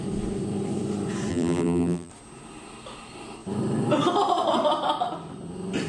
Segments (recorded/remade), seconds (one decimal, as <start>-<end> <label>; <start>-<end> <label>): 0.0-1.3 recorded; 1.3-2.1 remade; 2.1-5.9 recorded